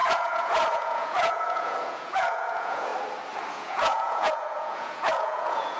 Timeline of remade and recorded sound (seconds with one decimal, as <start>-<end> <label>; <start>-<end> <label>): 0.0-2.9 remade; 2.9-3.5 recorded; 3.5-5.8 remade